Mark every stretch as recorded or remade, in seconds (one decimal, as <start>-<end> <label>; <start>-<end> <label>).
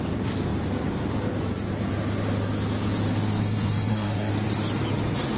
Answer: 0.0-3.4 recorded; 3.4-4.3 remade; 4.3-5.4 recorded